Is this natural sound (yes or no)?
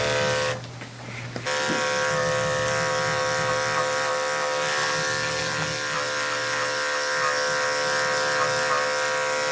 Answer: yes